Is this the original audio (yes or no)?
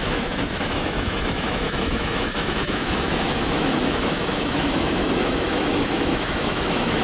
no